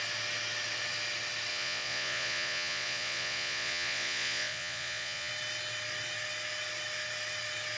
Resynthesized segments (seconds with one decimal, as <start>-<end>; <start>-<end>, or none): 1.5-5.3